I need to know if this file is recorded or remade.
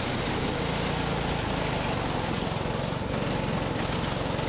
recorded